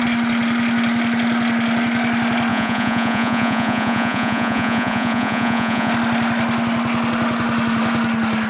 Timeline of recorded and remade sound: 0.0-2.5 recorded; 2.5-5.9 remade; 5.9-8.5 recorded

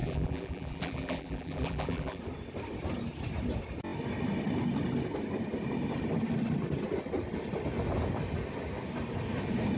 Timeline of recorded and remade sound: 0.0-2.2 remade; 2.2-9.8 recorded

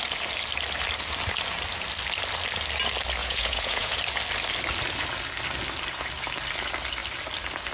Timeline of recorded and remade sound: 0.0-3.2 recorded; 3.2-4.0 remade; 4.0-7.7 recorded

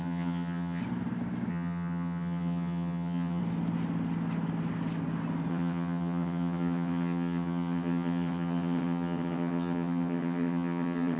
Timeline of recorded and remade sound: 0.0-0.8 remade; 0.8-1.5 recorded; 1.5-3.4 remade; 3.4-5.5 recorded; 5.5-11.2 remade

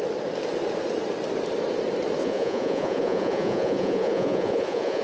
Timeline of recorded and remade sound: 0.0-2.2 recorded; 2.2-5.0 remade